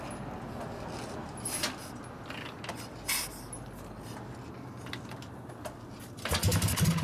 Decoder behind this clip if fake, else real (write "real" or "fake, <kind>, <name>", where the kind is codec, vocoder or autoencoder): real